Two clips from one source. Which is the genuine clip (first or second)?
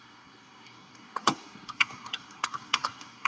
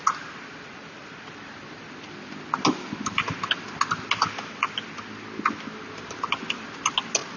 second